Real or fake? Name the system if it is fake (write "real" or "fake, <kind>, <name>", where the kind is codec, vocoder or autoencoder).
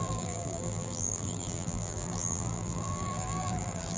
fake, vocoder, BigVGAN v2